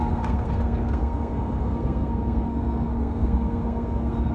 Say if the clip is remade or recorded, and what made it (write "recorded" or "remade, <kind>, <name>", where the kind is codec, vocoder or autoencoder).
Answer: remade, codec, SNAC